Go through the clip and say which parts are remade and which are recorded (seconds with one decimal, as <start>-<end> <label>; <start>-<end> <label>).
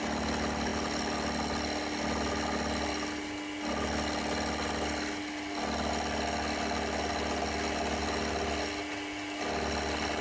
0.0-10.2 recorded